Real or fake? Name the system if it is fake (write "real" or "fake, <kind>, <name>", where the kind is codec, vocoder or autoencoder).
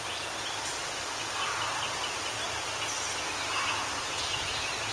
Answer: real